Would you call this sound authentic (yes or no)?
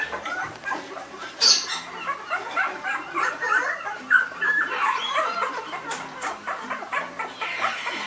no